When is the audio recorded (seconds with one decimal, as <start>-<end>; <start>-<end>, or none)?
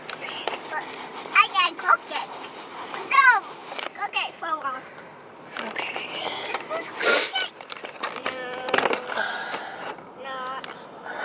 0.0-3.6; 8.8-11.2